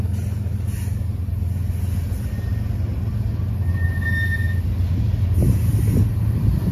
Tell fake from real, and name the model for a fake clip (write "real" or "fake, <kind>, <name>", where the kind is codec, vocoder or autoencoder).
real